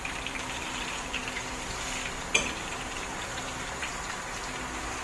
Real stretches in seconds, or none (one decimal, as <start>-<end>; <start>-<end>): 1.2-2.6; 3.9-5.0